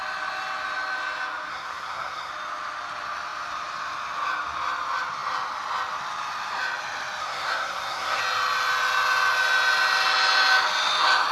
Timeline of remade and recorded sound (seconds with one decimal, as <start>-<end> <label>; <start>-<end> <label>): 0.0-1.5 recorded; 1.5-2.3 remade; 2.3-7.2 recorded; 7.2-8.2 remade; 8.2-11.3 recorded